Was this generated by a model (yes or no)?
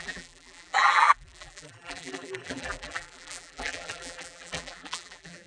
yes